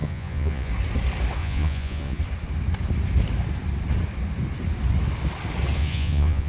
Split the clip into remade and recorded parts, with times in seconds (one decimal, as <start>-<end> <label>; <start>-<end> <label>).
0.0-0.7 remade; 0.7-1.4 recorded; 1.4-2.2 remade; 2.2-5.8 recorded; 5.8-6.5 remade